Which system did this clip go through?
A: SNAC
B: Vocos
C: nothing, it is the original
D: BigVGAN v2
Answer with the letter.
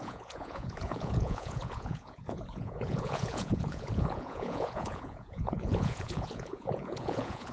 B